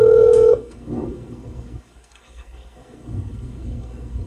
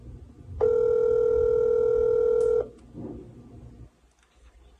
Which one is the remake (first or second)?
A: first